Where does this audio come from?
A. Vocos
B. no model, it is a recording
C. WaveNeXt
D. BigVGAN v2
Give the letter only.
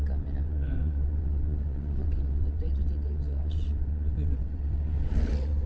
C